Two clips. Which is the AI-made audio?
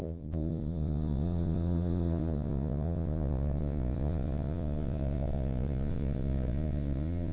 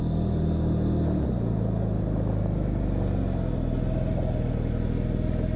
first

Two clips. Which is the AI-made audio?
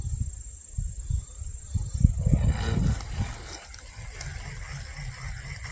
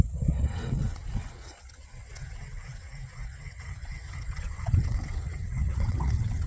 second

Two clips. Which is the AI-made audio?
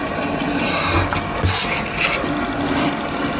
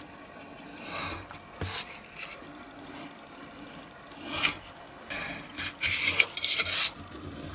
second